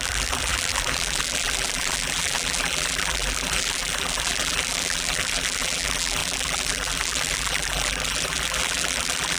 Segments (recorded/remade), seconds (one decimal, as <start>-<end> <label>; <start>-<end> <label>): 0.0-9.4 remade